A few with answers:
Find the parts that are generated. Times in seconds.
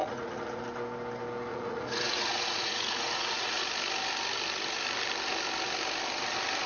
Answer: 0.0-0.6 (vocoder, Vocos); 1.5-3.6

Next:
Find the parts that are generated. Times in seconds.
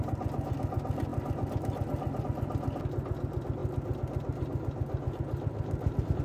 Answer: none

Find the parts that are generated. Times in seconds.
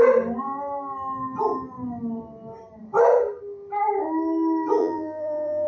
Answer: 4.8-5.7 (vocoder, BigVGAN v2)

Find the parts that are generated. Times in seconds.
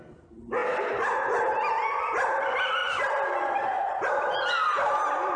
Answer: 0.6-1.2 (vocoder, BigVGAN v2); 2.8-4.1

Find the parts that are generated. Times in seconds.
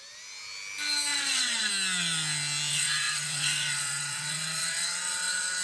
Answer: 1.1-1.7 (vocoder, WaveNeXt); 2.7-5.6